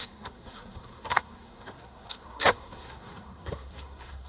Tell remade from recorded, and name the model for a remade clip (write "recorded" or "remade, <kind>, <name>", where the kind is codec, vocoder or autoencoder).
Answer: remade, codec, SNAC